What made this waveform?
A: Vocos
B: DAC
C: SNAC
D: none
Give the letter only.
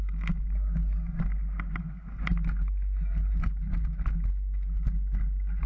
D